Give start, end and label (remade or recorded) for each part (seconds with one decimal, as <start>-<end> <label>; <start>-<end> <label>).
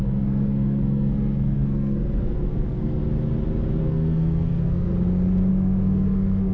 0.0-3.0 remade; 3.0-3.8 recorded; 3.8-4.9 remade; 4.9-5.5 recorded; 5.5-6.5 remade